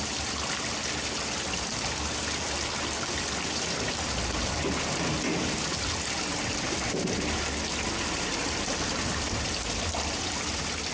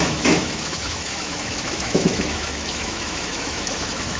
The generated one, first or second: second